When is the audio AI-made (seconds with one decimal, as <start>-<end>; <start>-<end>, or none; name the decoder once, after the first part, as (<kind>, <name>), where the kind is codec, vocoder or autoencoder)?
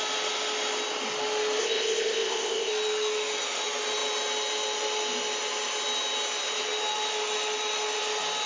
1.6-2.7 (codec, ZipCodec)